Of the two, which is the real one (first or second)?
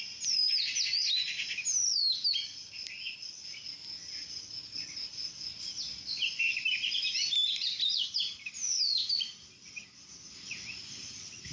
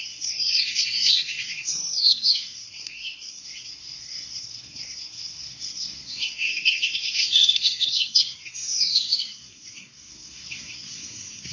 first